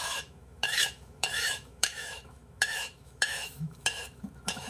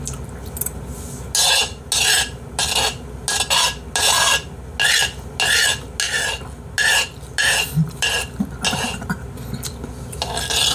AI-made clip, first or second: first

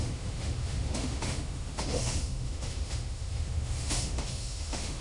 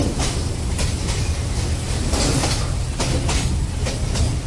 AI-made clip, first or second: first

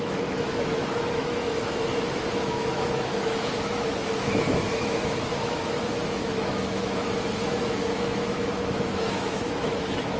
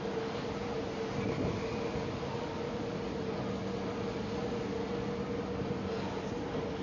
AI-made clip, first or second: first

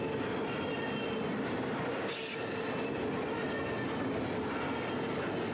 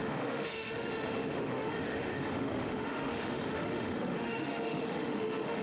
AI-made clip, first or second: second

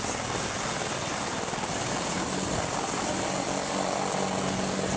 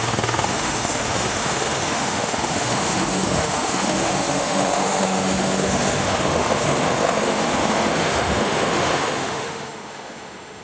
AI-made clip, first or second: second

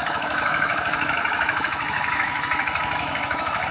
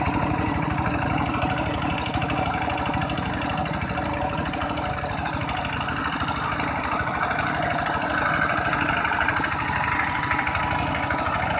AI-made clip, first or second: first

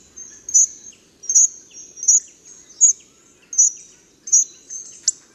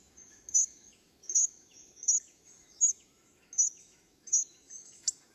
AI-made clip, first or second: second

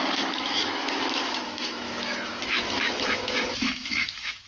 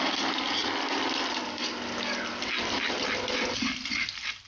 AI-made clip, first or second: first